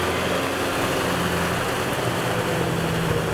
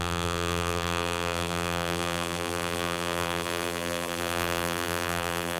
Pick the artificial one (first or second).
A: second